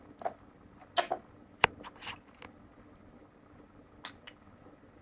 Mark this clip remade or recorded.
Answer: recorded